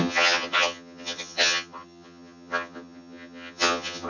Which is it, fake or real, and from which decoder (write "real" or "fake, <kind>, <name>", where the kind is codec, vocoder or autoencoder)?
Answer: fake, vocoder, HiFi-GAN